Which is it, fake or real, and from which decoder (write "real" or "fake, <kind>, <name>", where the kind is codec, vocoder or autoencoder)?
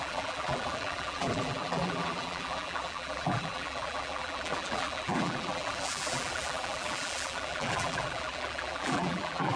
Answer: fake, vocoder, BigVGAN v2